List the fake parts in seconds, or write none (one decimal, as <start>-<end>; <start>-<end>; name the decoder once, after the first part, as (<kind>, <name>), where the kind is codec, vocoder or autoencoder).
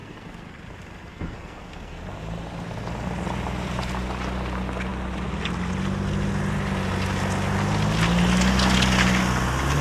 0.0-0.6 (codec, SNAC); 1.1-2.0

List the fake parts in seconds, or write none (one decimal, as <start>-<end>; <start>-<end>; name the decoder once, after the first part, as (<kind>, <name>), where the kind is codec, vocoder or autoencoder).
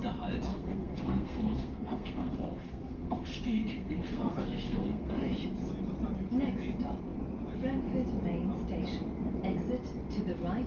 0.5-5.1 (codec, SNAC)